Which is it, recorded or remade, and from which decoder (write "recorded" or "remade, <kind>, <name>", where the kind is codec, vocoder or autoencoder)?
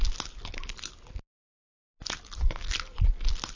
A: recorded